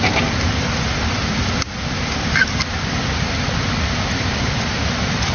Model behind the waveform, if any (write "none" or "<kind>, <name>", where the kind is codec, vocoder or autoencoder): none